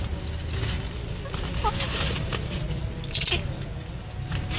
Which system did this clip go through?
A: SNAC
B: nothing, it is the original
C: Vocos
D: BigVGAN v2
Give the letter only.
B